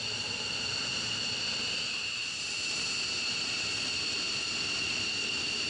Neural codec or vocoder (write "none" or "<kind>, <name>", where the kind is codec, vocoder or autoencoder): none